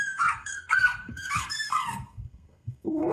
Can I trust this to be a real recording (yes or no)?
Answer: no